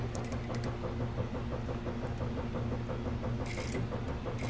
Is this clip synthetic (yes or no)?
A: no